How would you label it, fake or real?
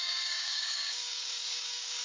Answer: fake